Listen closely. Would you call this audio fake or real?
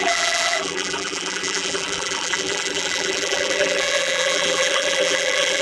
fake